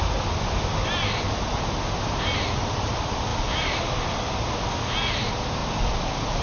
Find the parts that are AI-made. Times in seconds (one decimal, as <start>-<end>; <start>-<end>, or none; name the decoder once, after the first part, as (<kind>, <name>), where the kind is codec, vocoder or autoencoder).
3.3-4.7 (vocoder, BigVGAN v2)